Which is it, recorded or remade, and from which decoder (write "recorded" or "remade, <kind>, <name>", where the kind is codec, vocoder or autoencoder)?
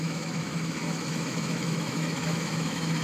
remade, autoencoder, DAC-VAE